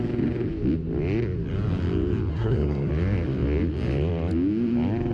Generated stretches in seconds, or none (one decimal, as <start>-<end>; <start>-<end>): 2.3-2.9